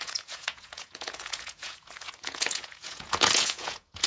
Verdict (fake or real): fake